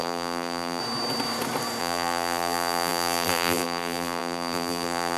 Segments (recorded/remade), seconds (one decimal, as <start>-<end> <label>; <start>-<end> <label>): 0.0-0.8 remade; 0.8-1.8 recorded; 1.8-5.2 remade

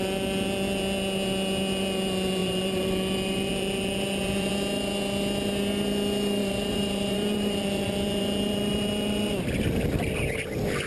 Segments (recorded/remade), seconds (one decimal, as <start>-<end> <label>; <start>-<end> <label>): 0.0-2.4 recorded; 2.4-4.5 remade; 4.5-6.4 recorded; 6.4-9.5 remade; 9.5-10.9 recorded